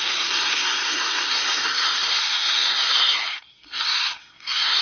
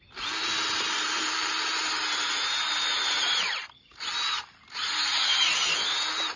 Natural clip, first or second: second